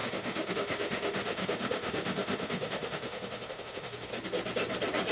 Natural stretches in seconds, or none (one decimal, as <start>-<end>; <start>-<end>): 4.1-5.1